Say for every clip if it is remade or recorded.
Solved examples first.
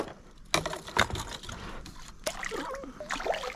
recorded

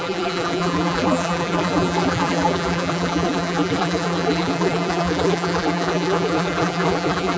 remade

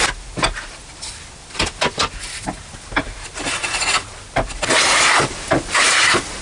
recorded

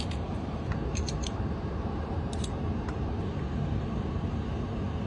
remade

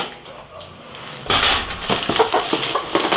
remade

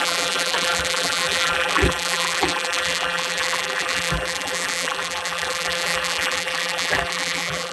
remade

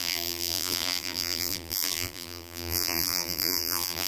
remade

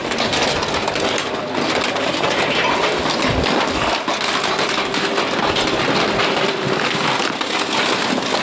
recorded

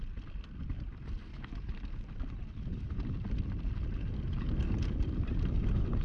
recorded